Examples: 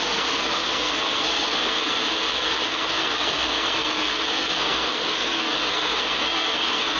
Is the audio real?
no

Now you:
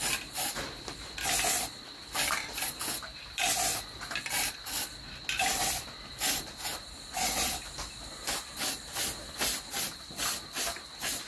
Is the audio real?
yes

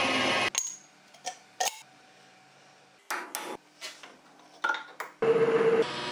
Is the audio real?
yes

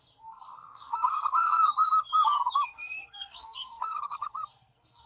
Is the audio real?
no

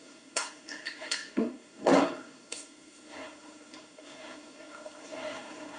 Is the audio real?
no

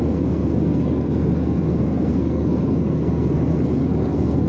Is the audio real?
no